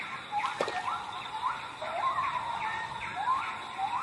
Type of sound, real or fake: real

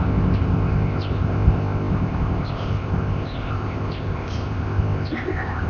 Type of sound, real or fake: fake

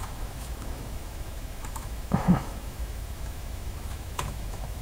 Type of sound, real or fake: fake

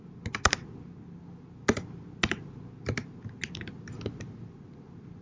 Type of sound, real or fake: real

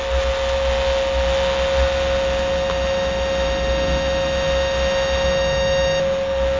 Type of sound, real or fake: real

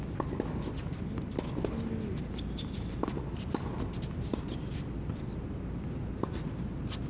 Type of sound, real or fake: real